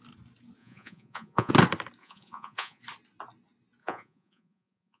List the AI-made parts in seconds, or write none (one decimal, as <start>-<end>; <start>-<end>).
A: 0.6-1.5; 2.0-2.8; 3.8-5.0